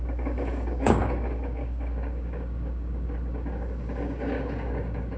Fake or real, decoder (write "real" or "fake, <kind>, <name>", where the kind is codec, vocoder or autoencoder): fake, codec, DAC